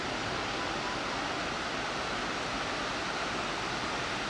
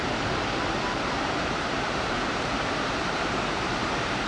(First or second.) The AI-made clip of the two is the second